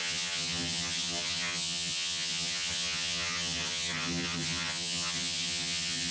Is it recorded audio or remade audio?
remade